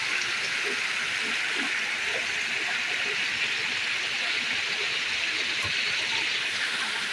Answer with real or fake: real